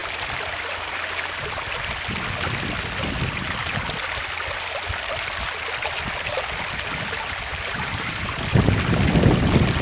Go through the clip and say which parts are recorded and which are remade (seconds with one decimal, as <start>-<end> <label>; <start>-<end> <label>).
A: 0.0-7.5 recorded; 7.5-8.4 remade; 8.4-9.8 recorded